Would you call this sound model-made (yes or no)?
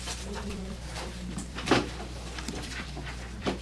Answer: yes